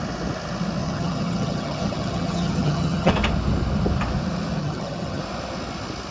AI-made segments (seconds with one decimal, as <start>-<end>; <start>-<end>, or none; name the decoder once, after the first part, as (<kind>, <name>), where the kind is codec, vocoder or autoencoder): 0.8-3.1 (vocoder, HiFi-GAN); 4.6-5.2